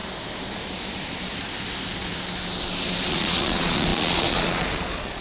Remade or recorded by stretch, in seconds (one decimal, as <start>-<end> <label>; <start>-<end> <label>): 0.0-3.1 recorded; 3.1-5.2 remade